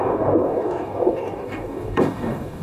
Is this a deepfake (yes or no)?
yes